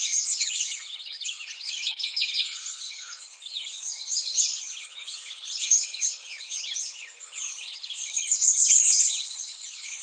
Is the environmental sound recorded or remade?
remade